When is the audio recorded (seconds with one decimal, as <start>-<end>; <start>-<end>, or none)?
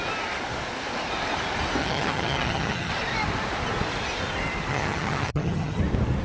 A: 0.0-1.8; 2.9-4.7; 5.8-6.2